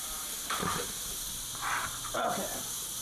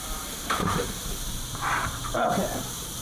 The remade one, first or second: second